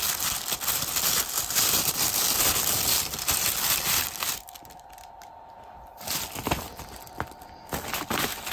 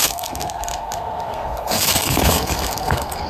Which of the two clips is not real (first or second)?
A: second